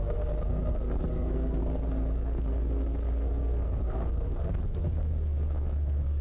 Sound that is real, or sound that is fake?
fake